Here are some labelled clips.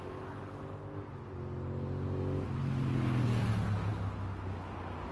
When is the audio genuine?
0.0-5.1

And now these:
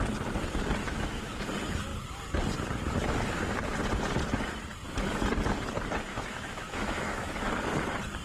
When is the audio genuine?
0.0-0.8; 1.4-6.1; 7.5-8.2

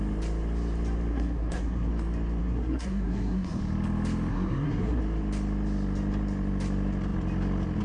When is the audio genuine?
0.0-1.1; 1.9-2.4; 3.6-4.3; 5.0-7.8

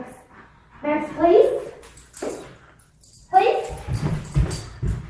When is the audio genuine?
0.0-5.1

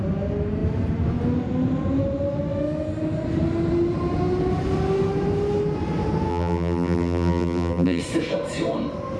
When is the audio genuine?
0.0-6.3; 8.0-9.2

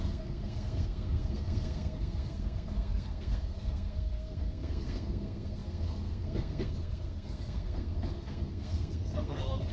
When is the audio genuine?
none

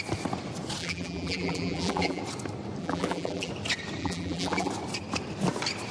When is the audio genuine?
0.0-0.8; 2.2-2.8; 3.5-4.0; 4.7-5.9

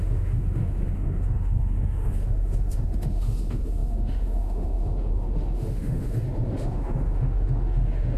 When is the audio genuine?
none